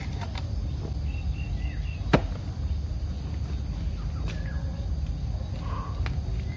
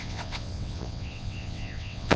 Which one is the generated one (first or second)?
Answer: second